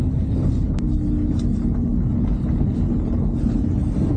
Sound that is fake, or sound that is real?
real